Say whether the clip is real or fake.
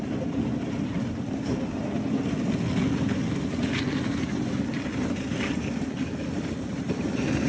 real